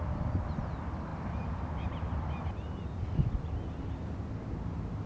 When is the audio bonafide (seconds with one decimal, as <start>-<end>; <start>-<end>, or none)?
0.0-5.1